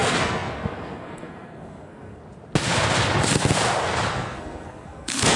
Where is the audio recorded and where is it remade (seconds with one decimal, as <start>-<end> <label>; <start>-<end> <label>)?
0.0-2.2 remade; 2.2-4.1 recorded; 4.1-5.4 remade